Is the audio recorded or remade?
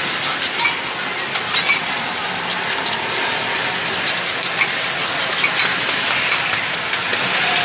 recorded